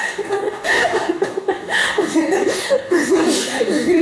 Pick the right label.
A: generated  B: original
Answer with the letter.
A